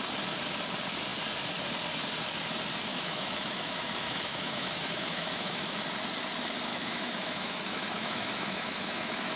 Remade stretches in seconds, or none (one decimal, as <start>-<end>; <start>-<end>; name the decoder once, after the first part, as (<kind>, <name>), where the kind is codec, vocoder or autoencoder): 2.9-5.8 (autoencoder, DAC-VAE); 6.7-9.4